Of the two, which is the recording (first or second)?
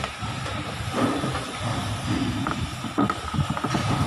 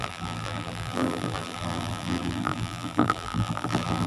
first